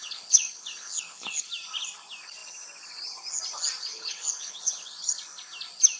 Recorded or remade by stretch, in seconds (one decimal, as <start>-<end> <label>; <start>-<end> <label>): 0.0-1.5 remade; 1.5-3.9 recorded; 3.9-4.9 remade; 4.9-6.0 recorded